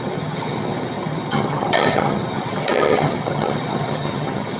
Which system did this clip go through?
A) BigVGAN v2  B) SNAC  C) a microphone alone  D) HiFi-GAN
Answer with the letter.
D